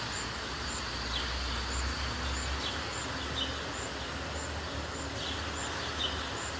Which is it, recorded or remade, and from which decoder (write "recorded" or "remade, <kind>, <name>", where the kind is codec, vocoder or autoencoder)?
recorded